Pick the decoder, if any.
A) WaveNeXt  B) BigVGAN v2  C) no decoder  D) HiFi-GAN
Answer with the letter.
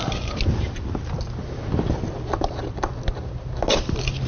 C